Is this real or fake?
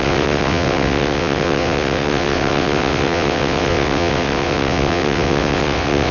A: fake